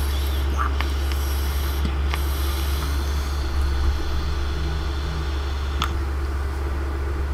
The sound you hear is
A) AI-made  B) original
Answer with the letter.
B